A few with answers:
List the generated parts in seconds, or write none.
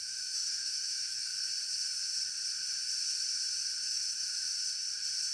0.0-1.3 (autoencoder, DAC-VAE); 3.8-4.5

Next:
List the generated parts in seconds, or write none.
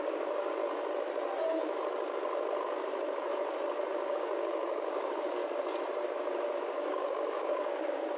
0.0-0.6 (codec, DAC); 4.1-5.4; 6.6-8.2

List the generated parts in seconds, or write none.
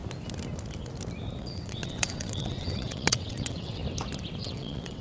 1.4-3.8 (vocoder, WaveNeXt); 4.4-5.0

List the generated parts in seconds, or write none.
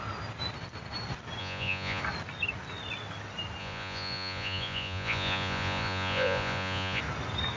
1.4-2.0 (vocoder, Vocos); 3.6-7.0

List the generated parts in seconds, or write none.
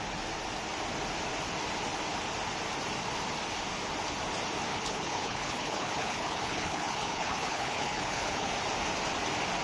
4.7-8.5 (codec, HILCodec)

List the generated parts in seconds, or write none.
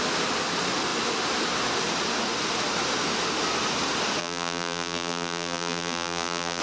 4.2-6.6 (vocoder, BigVGAN v2)